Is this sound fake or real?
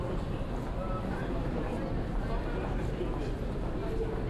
real